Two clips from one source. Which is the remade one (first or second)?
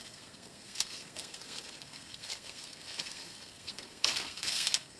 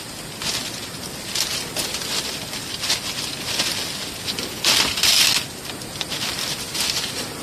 first